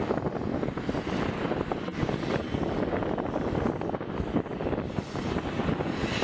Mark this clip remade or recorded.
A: recorded